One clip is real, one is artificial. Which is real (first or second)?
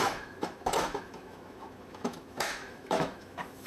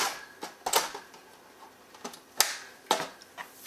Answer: second